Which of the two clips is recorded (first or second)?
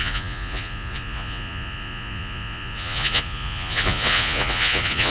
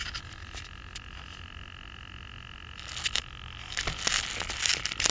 second